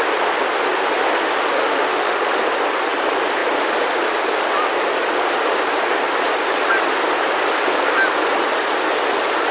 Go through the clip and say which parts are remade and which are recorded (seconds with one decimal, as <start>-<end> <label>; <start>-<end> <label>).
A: 0.0-1.5 recorded; 1.5-2.3 remade; 2.3-9.5 recorded